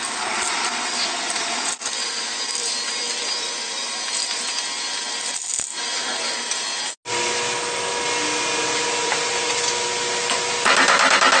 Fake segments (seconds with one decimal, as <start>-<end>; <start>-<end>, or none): none